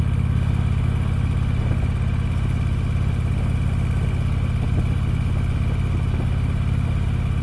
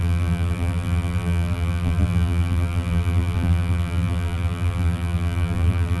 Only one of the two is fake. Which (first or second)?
second